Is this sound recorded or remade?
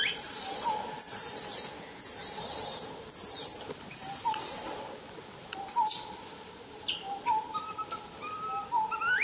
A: recorded